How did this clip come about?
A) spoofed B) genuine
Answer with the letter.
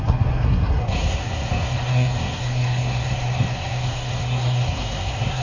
A